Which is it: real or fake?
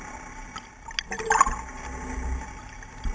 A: real